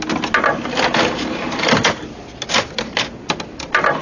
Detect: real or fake real